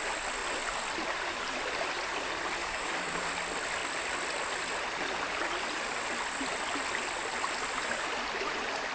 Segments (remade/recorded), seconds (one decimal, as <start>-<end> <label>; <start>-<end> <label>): 0.0-2.6 recorded; 2.6-3.3 remade; 3.3-8.9 recorded

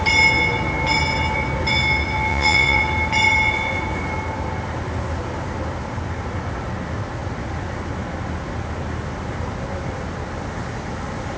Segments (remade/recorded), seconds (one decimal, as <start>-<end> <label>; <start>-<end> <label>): 0.0-2.3 recorded; 2.3-2.8 remade; 2.8-11.4 recorded

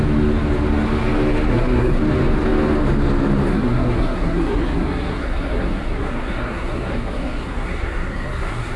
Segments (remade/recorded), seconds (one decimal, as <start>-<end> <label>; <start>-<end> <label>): 0.0-1.5 recorded; 1.5-2.0 remade; 2.0-3.5 recorded; 3.5-8.8 remade